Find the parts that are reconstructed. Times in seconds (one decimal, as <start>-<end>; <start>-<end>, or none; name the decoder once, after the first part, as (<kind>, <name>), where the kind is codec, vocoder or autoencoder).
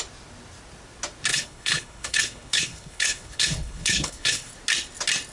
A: 1.3-4.5 (codec, HILCodec)